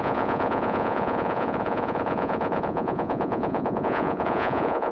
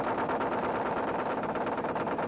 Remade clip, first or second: first